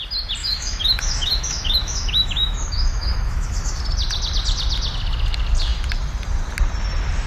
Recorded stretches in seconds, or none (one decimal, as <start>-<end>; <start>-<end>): 0.0-0.4; 3.8-7.3